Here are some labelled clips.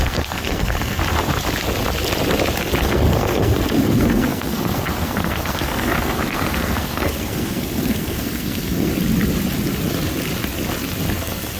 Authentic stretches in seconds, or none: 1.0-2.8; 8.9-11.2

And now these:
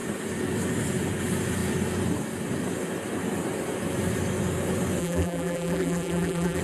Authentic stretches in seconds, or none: 0.0-5.0

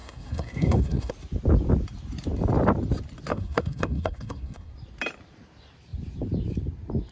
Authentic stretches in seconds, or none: 1.1-3.3; 4.7-7.1

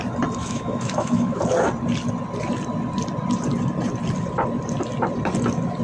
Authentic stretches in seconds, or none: 0.0-0.4; 1.4-5.8

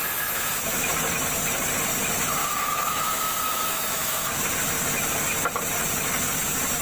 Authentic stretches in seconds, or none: 0.0-2.4; 4.5-6.8